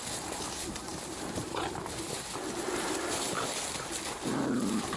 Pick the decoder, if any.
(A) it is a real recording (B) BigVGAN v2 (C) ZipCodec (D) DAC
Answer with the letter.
A